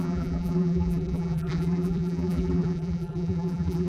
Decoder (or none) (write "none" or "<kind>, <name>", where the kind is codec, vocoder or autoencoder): vocoder, BigVGAN v2